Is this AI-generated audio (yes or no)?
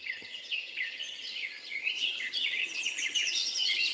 yes